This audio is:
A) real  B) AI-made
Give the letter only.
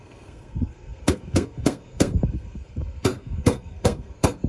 B